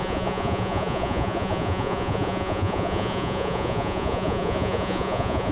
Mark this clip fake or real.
fake